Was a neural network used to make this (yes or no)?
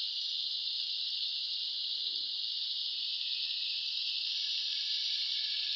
no